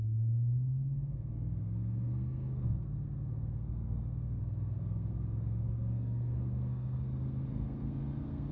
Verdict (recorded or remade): remade